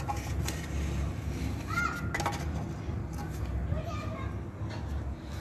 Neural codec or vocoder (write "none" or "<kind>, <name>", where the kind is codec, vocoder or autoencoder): none